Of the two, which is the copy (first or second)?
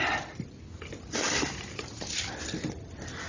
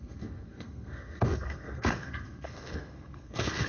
second